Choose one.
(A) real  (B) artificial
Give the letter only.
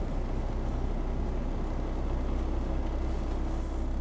A